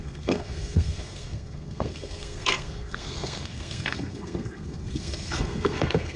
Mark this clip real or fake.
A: fake